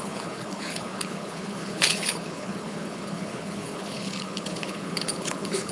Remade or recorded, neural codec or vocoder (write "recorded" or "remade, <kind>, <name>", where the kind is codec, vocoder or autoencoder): remade, codec, HILCodec